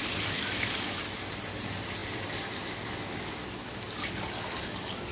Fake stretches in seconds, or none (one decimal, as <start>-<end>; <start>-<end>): none